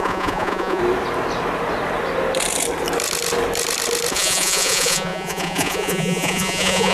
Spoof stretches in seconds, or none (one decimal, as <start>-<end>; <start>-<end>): 0.0-0.8; 4.1-6.9